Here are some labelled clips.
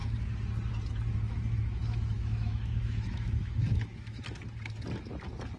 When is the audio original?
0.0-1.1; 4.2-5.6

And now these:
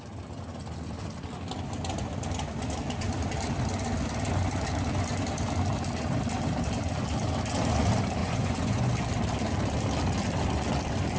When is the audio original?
0.0-8.2; 8.9-11.2

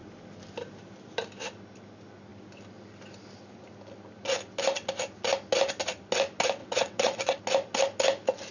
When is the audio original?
0.0-6.6; 7.4-8.5

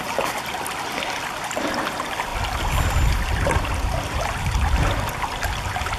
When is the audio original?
0.0-6.0

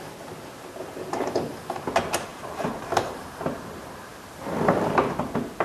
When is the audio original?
0.0-2.3; 3.4-5.6

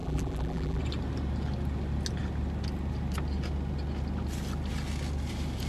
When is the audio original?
0.8-5.7

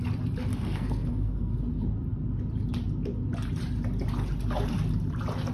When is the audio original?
0.0-0.5; 1.5-5.5